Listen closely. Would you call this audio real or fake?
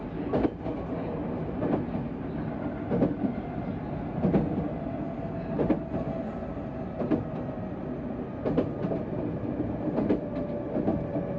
real